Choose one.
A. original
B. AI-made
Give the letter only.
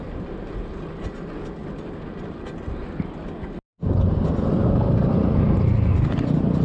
A